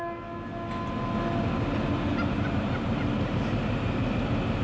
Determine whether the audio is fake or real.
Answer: real